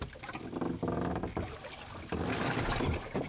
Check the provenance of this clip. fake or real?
real